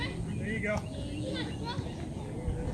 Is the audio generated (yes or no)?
no